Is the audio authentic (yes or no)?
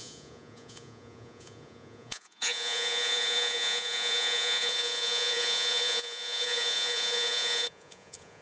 no